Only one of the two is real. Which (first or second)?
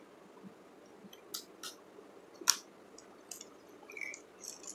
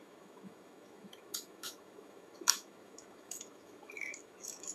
first